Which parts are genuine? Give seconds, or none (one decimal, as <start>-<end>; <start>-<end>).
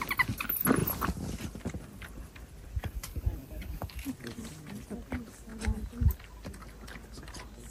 0.0-2.8; 4.1-7.7